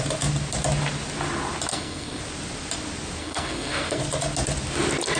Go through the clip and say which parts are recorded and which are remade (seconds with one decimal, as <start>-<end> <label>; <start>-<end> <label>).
0.0-1.7 recorded; 1.7-2.2 remade; 2.2-3.2 recorded; 3.2-4.0 remade; 4.0-5.2 recorded